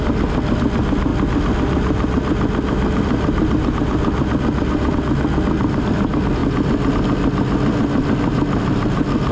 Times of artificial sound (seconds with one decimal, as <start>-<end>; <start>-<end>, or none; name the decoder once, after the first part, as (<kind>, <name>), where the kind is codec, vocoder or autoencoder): none